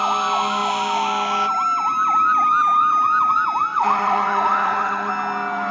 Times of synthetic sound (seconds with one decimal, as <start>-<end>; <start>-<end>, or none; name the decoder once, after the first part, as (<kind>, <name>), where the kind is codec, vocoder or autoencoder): 3.7-5.1 (vocoder, WaveNeXt)